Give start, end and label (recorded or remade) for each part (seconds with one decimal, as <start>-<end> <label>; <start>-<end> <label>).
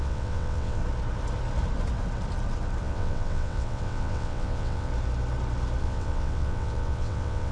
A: 0.0-0.8 remade; 0.8-2.8 recorded; 2.8-4.9 remade; 4.9-5.8 recorded; 5.8-7.5 remade